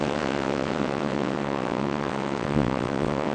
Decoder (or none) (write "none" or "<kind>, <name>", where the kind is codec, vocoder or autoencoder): vocoder, WaveNeXt